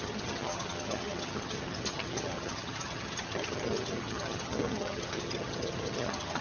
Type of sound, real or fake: fake